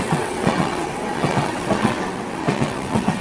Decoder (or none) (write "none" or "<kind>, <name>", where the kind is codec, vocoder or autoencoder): vocoder, WaveNeXt